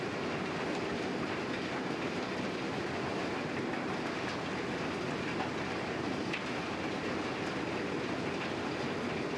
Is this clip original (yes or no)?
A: yes